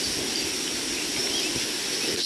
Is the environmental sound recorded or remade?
recorded